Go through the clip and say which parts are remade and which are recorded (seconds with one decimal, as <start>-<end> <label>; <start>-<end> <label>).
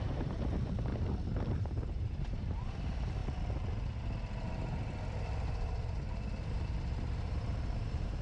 0.0-0.9 remade; 0.9-1.5 recorded; 1.5-3.2 remade; 3.2-6.5 recorded; 6.5-8.2 remade